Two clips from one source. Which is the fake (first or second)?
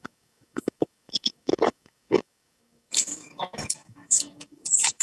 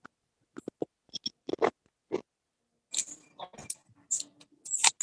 first